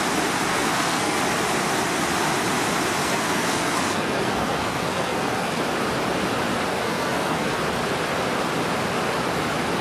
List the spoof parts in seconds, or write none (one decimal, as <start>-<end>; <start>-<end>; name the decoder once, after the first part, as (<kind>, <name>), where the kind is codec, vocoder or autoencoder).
0.5-1.2 (codec, SNAC); 3.0-5.6; 6.7-7.6